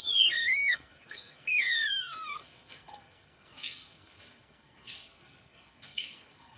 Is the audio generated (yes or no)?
yes